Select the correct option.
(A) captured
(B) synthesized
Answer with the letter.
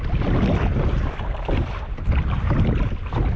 A